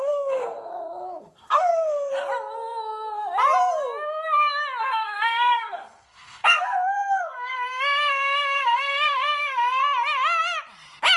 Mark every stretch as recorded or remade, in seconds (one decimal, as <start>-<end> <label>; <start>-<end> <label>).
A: 0.0-0.7 remade; 0.7-1.2 recorded; 1.2-2.1 remade; 2.1-4.8 recorded; 4.8-9.8 remade; 9.8-11.2 recorded